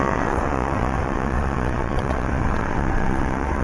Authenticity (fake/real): fake